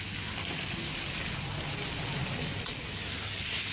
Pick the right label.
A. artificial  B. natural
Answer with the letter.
B